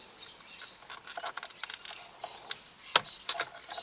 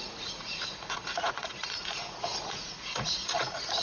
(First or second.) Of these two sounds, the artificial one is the second